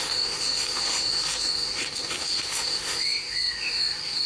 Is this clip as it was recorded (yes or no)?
no